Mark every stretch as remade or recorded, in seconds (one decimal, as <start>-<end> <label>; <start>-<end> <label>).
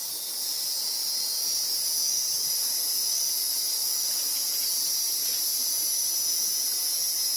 0.0-2.1 recorded; 2.1-4.3 remade; 4.3-7.4 recorded